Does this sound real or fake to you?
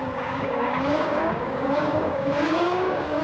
fake